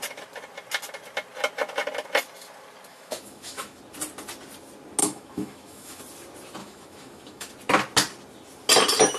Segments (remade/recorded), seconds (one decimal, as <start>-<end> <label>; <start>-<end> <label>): 0.0-2.9 recorded; 2.9-3.8 remade; 3.8-5.0 recorded; 5.0-6.0 remade; 6.0-6.6 recorded; 6.6-7.5 remade; 7.5-9.2 recorded